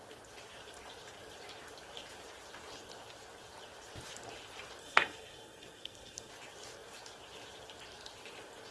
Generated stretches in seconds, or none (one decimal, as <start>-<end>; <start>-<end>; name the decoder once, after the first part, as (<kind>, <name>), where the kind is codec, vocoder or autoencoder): 4.8-6.3 (codec, SNAC)